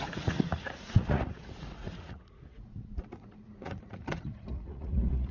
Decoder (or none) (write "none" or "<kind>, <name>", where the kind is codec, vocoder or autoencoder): vocoder, Vocos